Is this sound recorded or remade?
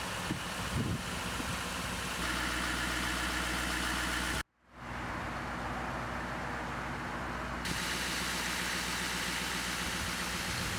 recorded